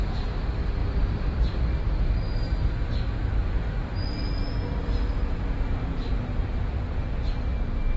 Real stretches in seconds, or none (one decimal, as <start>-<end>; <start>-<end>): 0.0-0.8; 1.8-8.0